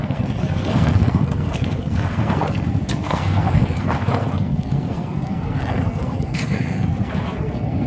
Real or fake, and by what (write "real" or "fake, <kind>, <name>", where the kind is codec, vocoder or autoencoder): fake, codec, SNAC